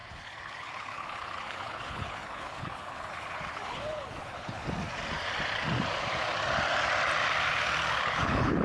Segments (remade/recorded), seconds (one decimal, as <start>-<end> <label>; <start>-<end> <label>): 0.0-4.6 remade; 4.6-8.0 recorded; 8.0-8.6 remade